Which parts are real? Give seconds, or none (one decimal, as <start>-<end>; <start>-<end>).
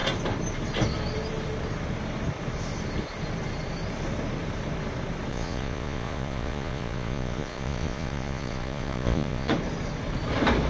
0.0-5.3; 9.5-10.7